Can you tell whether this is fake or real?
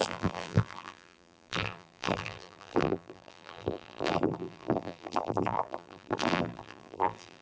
fake